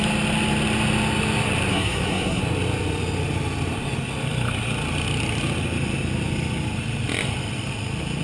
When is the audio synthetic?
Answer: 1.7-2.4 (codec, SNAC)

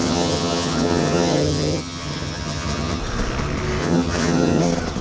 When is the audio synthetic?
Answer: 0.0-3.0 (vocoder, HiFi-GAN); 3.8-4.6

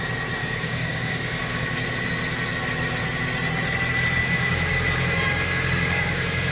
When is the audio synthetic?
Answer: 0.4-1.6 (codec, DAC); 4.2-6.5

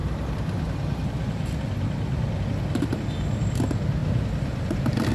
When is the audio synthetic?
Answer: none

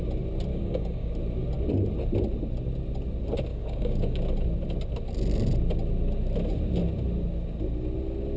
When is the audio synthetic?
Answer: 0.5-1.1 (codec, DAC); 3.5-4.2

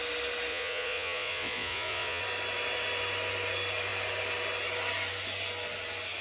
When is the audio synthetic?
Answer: 0.5-2.2 (vocoder, Vocos)

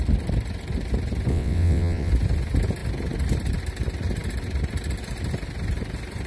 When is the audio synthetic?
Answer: 1.3-2.1 (vocoder, WaveNeXt)